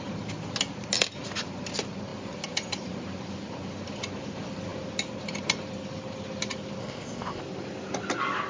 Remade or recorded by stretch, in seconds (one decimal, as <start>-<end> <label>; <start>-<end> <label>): 0.0-6.8 recorded; 6.8-7.4 remade; 7.4-8.5 recorded